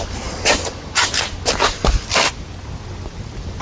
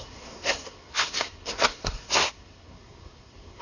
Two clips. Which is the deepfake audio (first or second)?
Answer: second